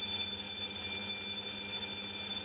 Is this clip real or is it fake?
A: real